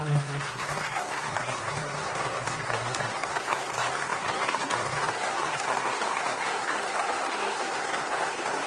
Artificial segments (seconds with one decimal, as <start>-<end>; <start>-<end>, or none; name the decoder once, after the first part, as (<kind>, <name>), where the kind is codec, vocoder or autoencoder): 0.0-8.7 (codec, SNAC)